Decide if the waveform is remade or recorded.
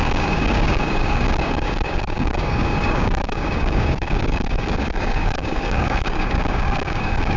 remade